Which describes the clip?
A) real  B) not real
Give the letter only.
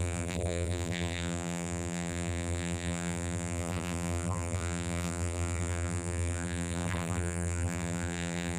B